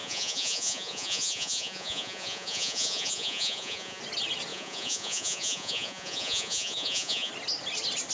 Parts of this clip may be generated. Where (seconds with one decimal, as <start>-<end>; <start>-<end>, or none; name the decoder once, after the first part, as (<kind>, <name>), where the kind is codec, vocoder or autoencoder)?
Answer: 0.0-4.0 (vocoder, Vocos); 4.5-7.3